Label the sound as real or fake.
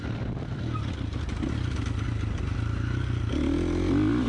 real